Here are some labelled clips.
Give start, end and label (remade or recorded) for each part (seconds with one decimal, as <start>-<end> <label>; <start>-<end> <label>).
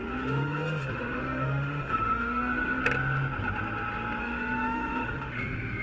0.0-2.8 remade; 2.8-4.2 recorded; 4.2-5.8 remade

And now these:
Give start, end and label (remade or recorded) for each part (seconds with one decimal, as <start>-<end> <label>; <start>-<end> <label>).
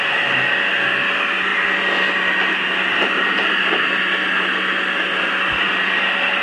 0.0-6.4 recorded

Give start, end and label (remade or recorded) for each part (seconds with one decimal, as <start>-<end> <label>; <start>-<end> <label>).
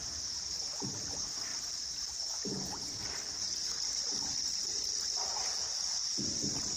0.0-6.8 recorded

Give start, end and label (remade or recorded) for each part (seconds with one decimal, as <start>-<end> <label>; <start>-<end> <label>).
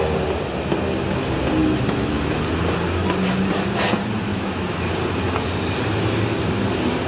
0.0-1.6 recorded; 1.6-2.4 remade; 2.4-4.3 recorded; 4.3-4.9 remade; 4.9-7.1 recorded